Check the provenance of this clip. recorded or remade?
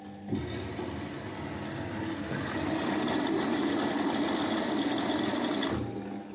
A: recorded